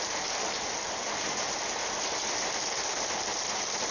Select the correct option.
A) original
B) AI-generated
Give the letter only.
A